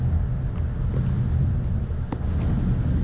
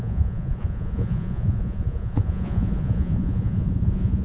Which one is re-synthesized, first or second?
second